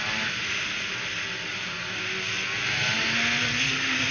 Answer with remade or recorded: recorded